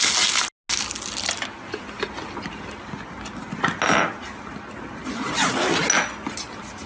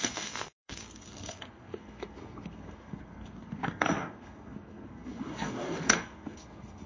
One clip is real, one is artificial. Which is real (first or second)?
first